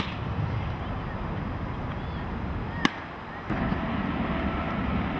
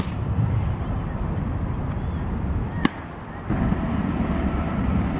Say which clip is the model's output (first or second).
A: second